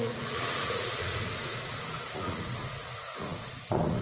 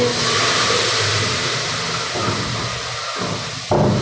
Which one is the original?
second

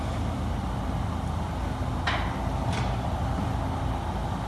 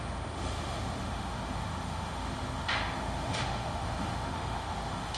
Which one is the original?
first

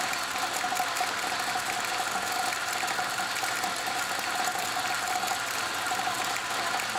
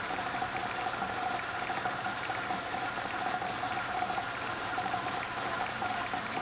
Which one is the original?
first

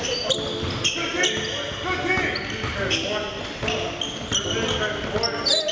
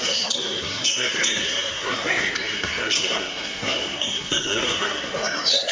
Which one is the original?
first